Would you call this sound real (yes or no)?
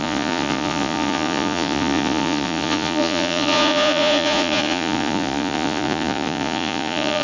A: no